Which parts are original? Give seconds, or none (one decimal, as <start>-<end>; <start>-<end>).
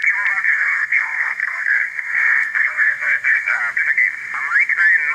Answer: 0.0-0.5; 3.6-5.1